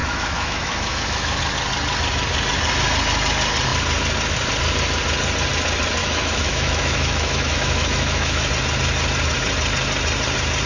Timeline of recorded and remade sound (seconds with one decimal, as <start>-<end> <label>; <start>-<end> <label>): 0.0-1.4 remade; 1.4-6.0 recorded; 6.0-8.5 remade; 8.5-10.7 recorded